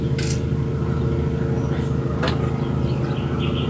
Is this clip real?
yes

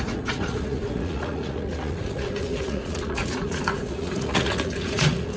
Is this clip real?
no